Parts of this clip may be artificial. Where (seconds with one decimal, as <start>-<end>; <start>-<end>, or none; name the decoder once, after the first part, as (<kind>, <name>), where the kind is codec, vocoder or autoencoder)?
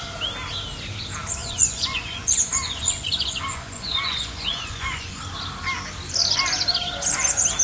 1.4-5.2 (vocoder, Vocos)